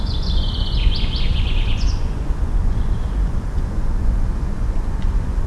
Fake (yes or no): yes